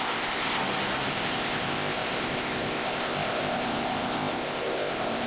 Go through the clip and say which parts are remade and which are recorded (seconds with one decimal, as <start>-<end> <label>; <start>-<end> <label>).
0.0-0.6 remade; 0.6-1.1 recorded; 1.1-5.3 remade